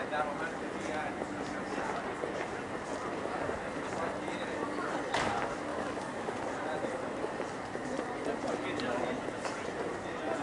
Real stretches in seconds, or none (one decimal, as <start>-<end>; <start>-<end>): 0.0-5.7; 6.4-10.4